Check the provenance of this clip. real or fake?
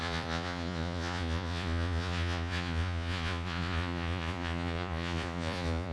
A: fake